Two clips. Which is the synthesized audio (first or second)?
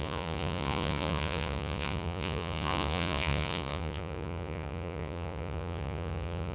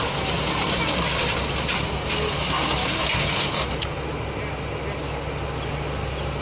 first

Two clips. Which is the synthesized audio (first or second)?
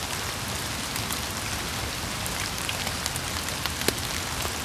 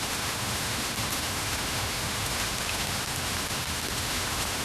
second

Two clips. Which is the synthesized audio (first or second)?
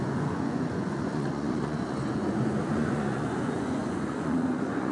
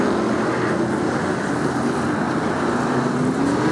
first